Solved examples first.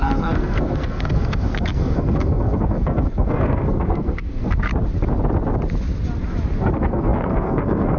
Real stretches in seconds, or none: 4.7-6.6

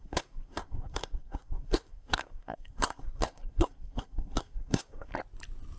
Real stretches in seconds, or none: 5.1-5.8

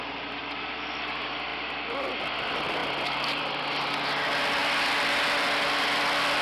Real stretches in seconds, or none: 0.0-6.4